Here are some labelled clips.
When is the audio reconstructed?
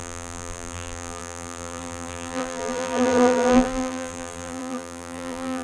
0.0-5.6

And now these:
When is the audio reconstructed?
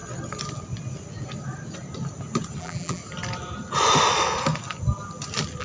2.6-3.0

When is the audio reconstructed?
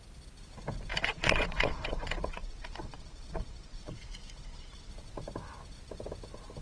0.9-4.9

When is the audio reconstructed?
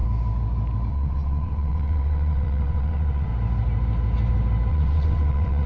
0.9-3.3; 4.7-5.7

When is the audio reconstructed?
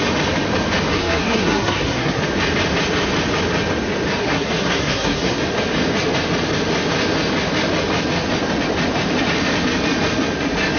0.9-2.2; 4.2-5.4